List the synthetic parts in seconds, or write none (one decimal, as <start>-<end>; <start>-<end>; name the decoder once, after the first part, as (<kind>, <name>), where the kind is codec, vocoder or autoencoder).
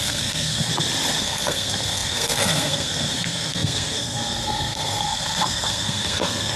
0.0-0.7 (codec, SNAC); 1.2-6.6